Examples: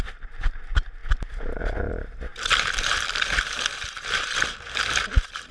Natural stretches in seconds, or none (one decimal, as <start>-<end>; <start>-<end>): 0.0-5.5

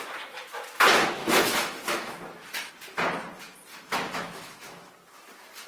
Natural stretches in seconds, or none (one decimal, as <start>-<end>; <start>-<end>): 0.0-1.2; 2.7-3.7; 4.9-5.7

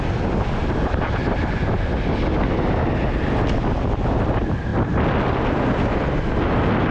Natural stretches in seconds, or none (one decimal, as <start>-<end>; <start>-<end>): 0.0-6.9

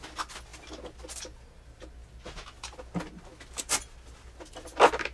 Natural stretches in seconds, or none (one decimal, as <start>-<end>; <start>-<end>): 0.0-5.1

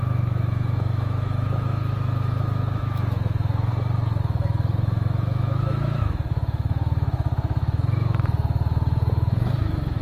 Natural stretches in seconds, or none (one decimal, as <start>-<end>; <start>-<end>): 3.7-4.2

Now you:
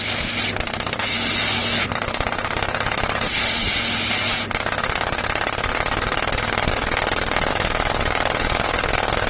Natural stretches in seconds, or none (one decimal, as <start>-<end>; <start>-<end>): 0.0-7.5; 8.0-9.3

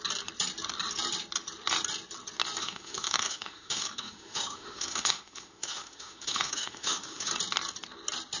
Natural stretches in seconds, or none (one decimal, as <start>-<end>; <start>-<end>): 0.0-2.6; 7.3-8.4

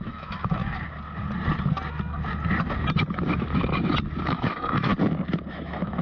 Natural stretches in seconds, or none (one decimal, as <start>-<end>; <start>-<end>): 0.6-4.2; 4.9-5.5